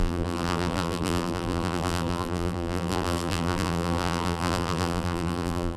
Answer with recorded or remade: remade